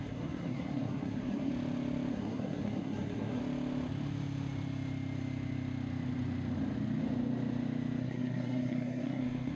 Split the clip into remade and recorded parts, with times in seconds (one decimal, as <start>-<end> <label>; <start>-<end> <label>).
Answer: 0.0-1.5 remade; 1.5-2.1 recorded; 2.1-3.4 remade; 3.4-8.0 recorded; 8.0-9.6 remade